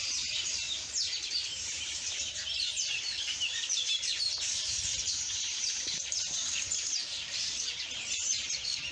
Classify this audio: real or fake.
fake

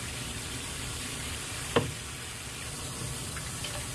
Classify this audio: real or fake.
fake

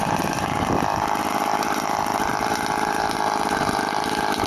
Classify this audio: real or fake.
fake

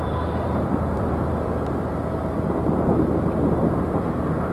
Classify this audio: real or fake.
fake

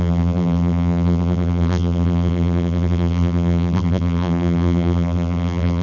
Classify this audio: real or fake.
fake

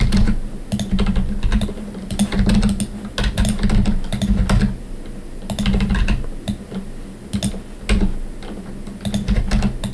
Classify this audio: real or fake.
real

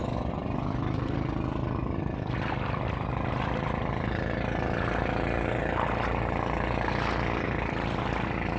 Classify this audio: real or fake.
real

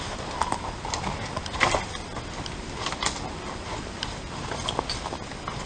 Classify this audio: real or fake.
real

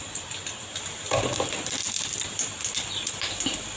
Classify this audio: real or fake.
real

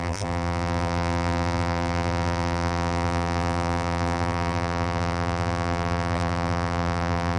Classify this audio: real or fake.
fake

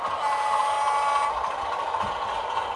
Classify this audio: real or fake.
real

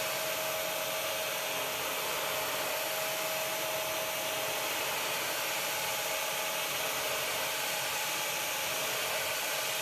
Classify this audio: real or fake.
real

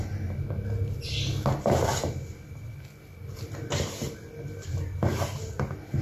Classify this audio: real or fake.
real